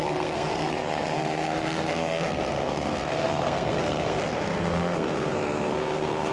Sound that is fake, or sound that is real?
fake